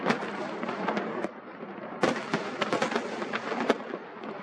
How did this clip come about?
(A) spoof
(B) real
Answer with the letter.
B